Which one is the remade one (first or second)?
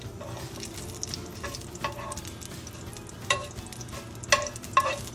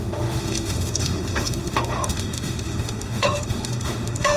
second